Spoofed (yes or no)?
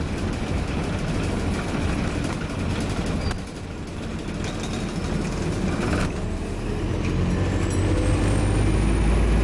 no